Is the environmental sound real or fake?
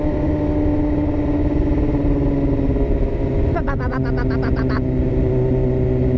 real